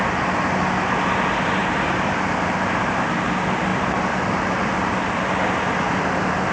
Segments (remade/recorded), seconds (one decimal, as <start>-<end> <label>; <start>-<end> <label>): 0.0-1.6 recorded; 1.6-3.1 remade; 3.1-6.5 recorded